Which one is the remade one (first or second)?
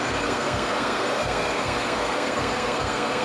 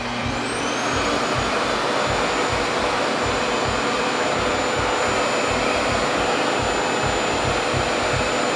first